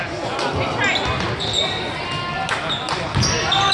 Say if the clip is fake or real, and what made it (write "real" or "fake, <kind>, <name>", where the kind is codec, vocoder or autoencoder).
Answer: real